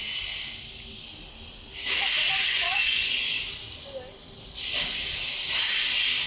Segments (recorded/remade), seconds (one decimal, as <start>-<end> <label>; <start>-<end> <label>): 0.0-2.4 recorded; 2.4-3.4 remade; 3.4-6.3 recorded

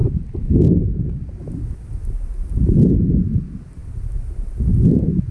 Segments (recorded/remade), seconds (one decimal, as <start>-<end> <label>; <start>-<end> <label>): 0.0-5.3 recorded

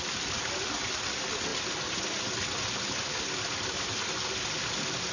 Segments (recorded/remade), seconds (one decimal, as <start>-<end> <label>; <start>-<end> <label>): 0.0-5.1 recorded